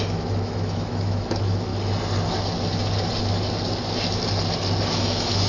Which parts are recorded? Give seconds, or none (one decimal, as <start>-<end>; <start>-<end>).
1.7-5.0